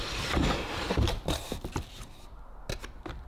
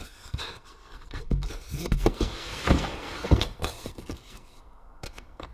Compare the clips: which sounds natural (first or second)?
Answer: first